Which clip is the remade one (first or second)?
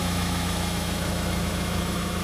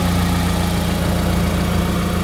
first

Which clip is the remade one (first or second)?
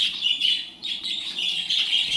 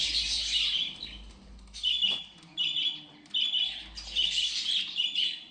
first